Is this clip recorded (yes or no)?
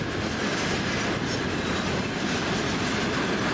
yes